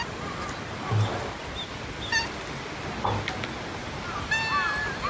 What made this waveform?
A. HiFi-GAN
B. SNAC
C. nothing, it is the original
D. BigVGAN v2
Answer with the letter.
C